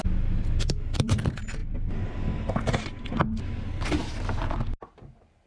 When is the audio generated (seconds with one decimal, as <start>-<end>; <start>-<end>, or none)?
none